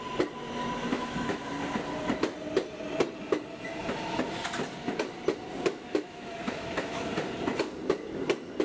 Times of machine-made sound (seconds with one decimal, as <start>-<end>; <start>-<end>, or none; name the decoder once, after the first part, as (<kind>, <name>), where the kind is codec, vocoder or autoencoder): 0.9-1.5 (autoencoder, DAC-VAE); 5.7-7.1

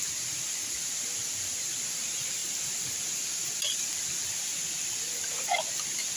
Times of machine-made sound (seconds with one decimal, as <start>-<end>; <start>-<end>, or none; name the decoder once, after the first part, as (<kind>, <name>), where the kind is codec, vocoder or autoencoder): none

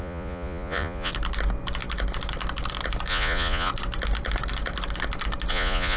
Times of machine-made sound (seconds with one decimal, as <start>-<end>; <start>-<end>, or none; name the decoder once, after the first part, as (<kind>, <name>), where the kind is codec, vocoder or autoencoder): 0.0-1.1 (vocoder, Vocos); 3.1-3.7; 5.5-6.0

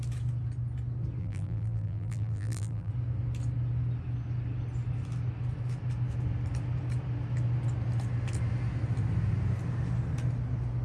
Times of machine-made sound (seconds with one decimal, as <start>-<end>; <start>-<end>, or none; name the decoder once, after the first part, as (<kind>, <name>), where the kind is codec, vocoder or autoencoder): 1.2-2.9 (vocoder, BigVGAN v2)

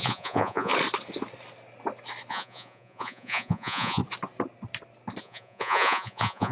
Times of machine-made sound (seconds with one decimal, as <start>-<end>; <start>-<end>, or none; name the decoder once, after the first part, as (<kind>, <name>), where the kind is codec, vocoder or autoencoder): 0.0-0.7 (vocoder, Vocos); 2.3-4.0; 5.2-6.5

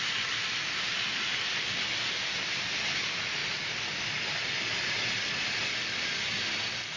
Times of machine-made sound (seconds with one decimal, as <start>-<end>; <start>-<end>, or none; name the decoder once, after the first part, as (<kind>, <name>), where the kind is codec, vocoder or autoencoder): none